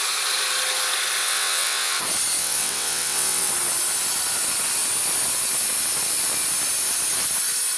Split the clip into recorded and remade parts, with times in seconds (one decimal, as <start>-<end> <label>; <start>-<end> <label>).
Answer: 0.0-1.2 recorded; 1.2-2.0 remade; 2.0-2.4 recorded; 2.4-3.5 remade; 3.5-7.8 recorded

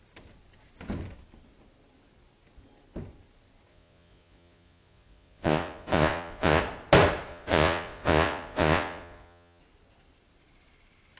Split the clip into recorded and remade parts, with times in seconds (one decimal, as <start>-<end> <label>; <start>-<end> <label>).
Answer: 0.0-3.7 recorded; 3.7-6.6 remade; 6.6-7.3 recorded; 7.3-9.6 remade; 9.6-11.2 recorded

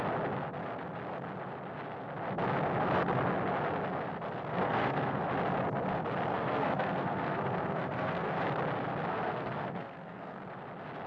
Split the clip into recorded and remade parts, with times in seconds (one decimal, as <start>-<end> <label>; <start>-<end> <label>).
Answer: 0.0-4.5 recorded; 4.5-5.2 remade; 5.2-6.3 recorded; 6.3-8.4 remade; 8.4-9.1 recorded; 9.1-10.4 remade; 10.4-11.1 recorded